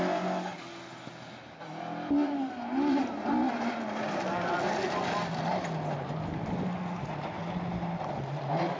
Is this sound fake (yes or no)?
no